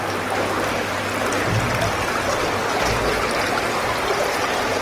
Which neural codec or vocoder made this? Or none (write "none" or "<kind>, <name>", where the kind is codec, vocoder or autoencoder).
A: none